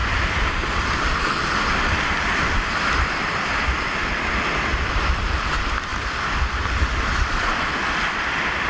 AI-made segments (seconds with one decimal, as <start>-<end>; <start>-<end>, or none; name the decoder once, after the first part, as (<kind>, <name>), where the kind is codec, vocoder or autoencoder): 0.0-4.3 (vocoder, BigVGAN v2); 4.7-5.3; 5.9-7.6

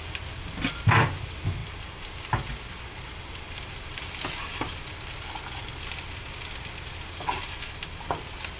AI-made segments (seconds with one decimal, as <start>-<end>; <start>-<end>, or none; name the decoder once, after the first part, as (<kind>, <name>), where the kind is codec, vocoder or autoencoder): none

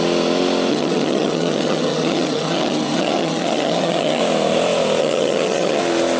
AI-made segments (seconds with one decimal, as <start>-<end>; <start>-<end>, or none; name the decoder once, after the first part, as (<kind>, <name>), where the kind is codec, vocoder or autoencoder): 0.7-4.2 (vocoder, HiFi-GAN); 5.0-5.8